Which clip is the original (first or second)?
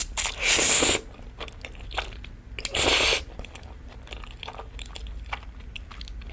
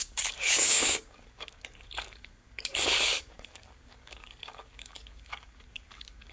first